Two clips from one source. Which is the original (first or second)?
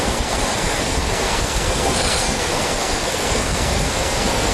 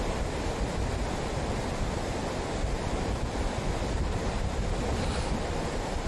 second